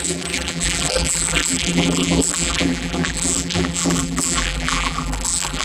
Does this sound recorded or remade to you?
remade